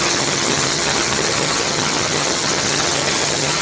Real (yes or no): no